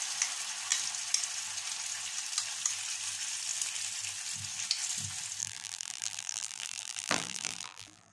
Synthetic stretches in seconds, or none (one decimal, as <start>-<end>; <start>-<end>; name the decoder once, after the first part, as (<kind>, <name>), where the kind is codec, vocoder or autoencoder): 5.4-8.1 (vocoder, BigVGAN v2)